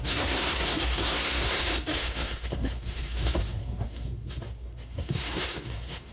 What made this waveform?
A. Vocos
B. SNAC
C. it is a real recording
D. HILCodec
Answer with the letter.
B